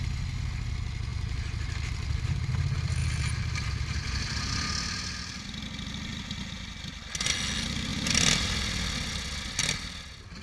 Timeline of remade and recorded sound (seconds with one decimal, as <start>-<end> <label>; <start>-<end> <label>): 0.0-1.1 recorded; 1.1-2.5 remade; 2.5-3.0 recorded; 3.0-4.0 remade; 4.0-10.4 recorded